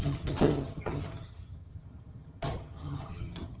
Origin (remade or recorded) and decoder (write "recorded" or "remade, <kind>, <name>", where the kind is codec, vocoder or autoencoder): remade, vocoder, HiFi-GAN